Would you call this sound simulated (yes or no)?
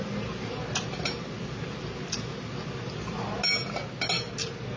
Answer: no